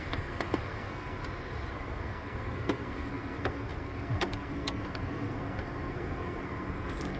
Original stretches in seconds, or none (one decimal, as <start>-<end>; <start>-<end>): 1.2-1.7